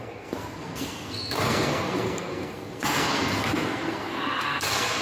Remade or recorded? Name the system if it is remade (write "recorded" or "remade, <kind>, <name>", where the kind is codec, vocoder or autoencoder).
remade, codec, SNAC